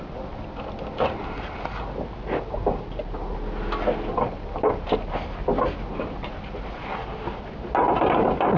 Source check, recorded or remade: recorded